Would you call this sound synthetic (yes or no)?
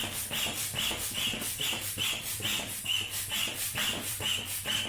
yes